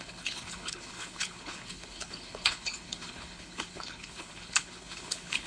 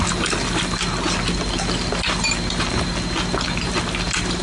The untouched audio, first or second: second